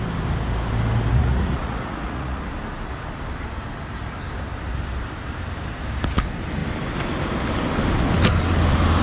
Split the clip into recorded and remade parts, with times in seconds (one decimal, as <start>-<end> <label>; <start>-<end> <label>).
0.0-1.1 recorded; 1.1-2.5 remade; 2.5-9.0 recorded